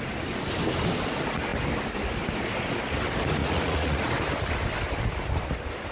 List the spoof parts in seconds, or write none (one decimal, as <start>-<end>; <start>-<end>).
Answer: 3.4-4.1